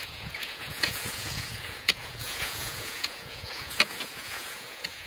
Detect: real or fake fake